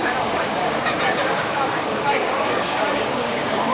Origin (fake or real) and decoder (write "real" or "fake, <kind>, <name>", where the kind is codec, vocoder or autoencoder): fake, codec, DAC